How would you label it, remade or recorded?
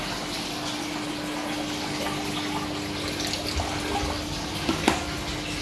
recorded